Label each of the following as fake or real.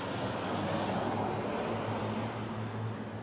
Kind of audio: real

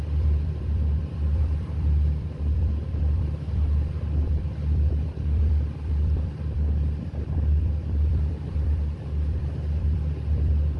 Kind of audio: fake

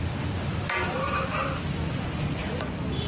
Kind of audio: real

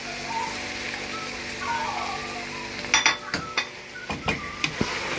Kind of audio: real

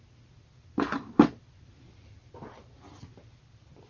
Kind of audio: real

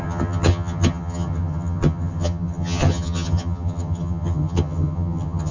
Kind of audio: fake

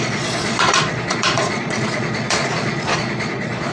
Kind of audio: fake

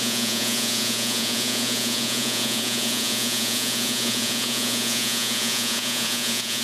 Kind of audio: fake